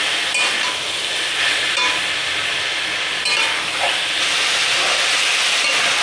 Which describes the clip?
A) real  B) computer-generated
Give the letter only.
A